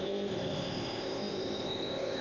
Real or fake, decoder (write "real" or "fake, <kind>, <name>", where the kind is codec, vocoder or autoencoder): fake, codec, ZipCodec